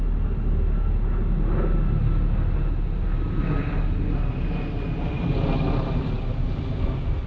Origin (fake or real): real